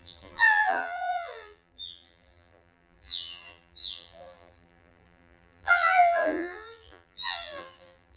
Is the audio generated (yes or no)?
yes